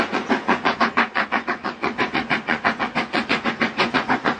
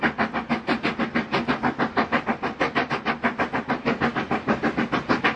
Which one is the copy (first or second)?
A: first